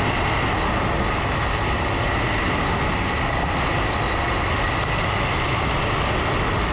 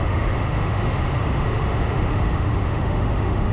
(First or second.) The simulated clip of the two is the second